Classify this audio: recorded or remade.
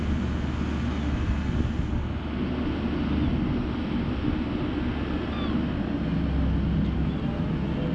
recorded